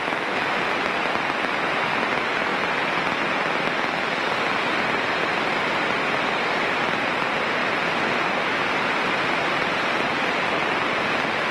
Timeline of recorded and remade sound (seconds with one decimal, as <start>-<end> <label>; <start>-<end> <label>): 0.0-11.5 recorded